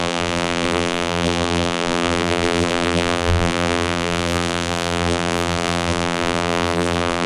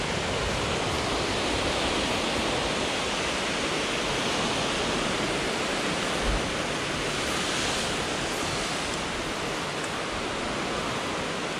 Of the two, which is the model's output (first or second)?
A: first